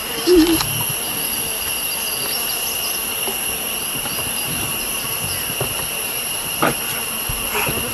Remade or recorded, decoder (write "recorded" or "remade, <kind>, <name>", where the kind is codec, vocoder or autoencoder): recorded